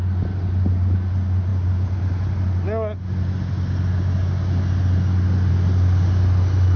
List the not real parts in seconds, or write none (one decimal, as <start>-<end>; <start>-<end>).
none